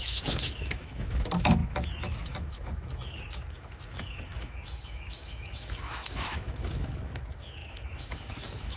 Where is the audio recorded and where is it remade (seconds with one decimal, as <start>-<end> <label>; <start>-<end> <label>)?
0.0-8.8 remade